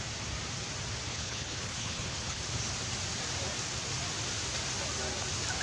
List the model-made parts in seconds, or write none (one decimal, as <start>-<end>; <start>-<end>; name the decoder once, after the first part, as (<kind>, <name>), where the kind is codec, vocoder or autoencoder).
1.1-2.4 (codec, HILCodec)